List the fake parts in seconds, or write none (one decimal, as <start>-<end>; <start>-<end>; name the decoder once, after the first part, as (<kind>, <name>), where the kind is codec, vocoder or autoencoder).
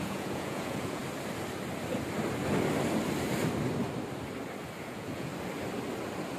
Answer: 0.0-1.0 (vocoder, Vocos); 4.8-5.3